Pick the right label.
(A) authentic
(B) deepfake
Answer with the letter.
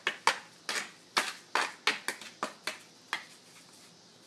A